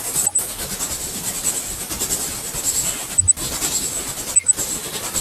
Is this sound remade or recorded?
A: recorded